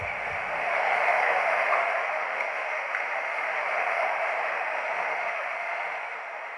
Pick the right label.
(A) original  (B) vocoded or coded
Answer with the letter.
B